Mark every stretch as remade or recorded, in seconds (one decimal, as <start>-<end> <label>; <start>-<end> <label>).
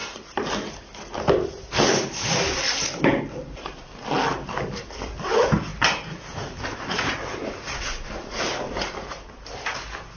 0.0-0.9 remade; 0.9-4.4 recorded; 4.4-5.3 remade; 5.3-10.2 recorded